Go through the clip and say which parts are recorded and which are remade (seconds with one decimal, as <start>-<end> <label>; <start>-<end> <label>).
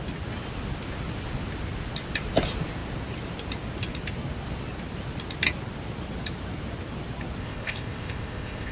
0.0-7.4 recorded; 7.4-8.7 remade